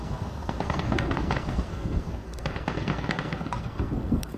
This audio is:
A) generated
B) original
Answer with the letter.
A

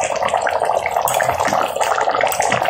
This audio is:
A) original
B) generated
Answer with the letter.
A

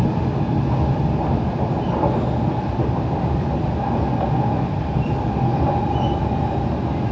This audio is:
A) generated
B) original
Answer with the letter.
B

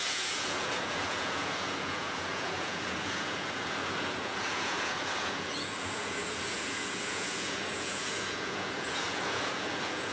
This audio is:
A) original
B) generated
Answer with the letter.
B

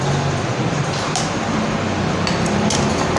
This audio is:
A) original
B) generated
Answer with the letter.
A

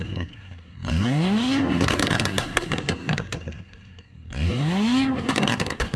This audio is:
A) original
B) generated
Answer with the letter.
B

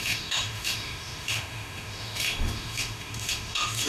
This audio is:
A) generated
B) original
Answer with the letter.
A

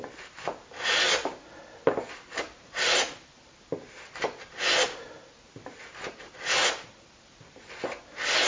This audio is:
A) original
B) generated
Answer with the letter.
A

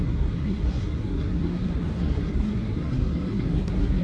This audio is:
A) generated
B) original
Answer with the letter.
A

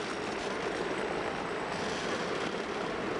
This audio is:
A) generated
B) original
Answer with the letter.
A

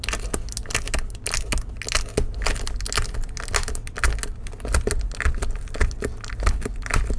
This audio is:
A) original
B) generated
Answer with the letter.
A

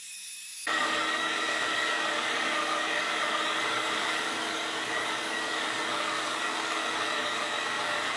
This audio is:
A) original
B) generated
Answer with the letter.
B